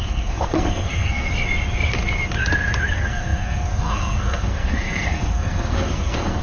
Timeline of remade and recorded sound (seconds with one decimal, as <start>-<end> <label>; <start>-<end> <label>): 0.0-1.3 remade; 1.3-2.9 recorded; 2.9-6.4 remade